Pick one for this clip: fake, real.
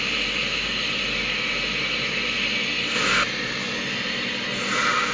real